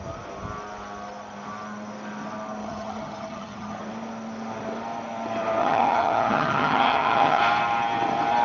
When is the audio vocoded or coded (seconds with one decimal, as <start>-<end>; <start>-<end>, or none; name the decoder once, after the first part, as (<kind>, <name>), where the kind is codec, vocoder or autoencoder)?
2.6-3.8 (vocoder, HiFi-GAN); 5.6-7.4